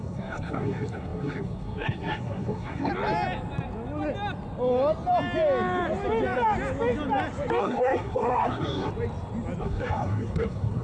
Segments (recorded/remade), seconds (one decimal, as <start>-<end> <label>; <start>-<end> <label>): 0.0-2.9 remade; 2.9-7.6 recorded; 7.6-8.9 remade; 8.9-9.6 recorded; 9.6-10.8 remade